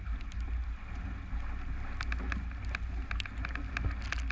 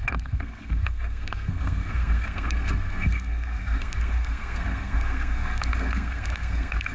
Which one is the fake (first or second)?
second